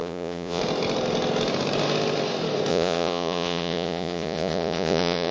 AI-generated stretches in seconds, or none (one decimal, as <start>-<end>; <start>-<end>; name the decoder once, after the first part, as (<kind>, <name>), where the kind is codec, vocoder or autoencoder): 0.0-0.6 (vocoder, Vocos); 2.7-5.3